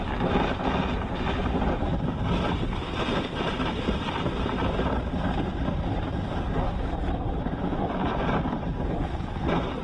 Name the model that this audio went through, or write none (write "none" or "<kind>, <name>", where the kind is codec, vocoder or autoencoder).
none